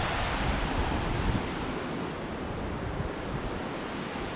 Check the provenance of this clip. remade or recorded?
recorded